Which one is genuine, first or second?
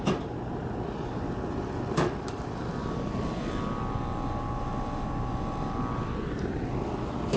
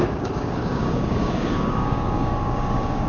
first